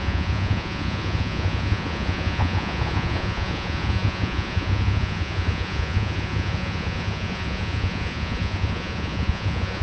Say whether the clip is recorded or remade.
remade